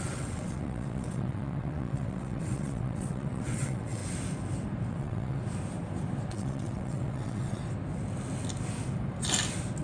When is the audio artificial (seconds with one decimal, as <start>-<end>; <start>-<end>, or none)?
0.0-4.0; 4.9-5.4; 6.3-7.6